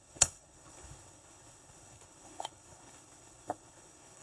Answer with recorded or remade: remade